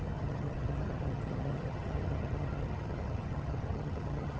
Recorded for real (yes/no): no